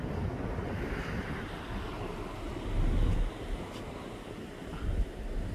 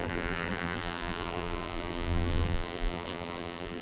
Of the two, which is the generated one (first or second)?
second